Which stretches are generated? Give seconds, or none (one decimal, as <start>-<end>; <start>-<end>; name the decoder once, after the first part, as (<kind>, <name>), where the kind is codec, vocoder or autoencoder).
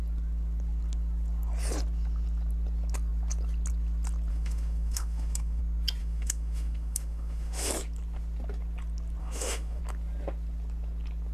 4.3-5.6 (autoencoder, DAC-VAE); 6.0-7.7; 9.2-9.8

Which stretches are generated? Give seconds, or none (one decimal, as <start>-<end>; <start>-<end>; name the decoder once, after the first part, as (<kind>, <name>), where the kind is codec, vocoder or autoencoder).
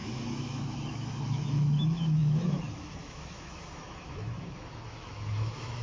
0.0-5.8 (autoencoder, DAC-VAE)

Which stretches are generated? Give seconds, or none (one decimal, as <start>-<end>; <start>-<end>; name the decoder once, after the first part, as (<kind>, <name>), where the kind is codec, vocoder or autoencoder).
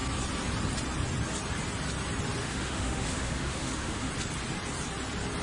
2.4-4.1 (autoencoder, DAC-VAE)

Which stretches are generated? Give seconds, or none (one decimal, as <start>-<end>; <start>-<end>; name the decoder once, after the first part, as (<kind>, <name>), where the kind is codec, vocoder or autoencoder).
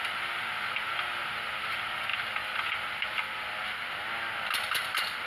none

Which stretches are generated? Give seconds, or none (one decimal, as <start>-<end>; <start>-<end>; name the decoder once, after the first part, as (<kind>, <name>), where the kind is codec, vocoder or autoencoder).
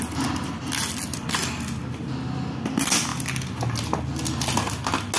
none